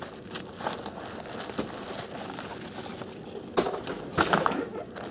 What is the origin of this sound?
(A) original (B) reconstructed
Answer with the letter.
A